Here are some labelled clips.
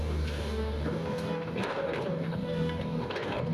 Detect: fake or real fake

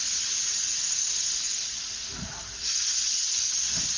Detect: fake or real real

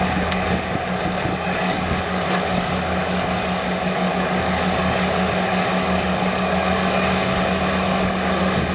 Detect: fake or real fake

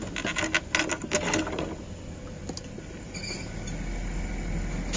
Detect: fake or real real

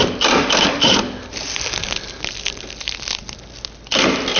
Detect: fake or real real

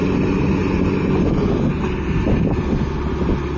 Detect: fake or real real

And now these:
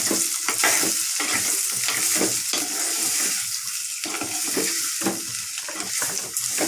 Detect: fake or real real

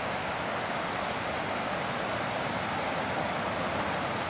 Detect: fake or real real